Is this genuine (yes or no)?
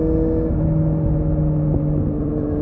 yes